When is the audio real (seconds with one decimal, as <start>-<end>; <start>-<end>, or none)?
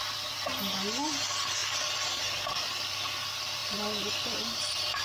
0.0-5.0